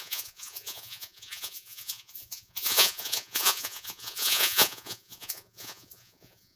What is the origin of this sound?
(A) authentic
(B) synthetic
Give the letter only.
B